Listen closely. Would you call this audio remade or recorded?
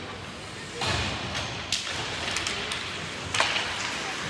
recorded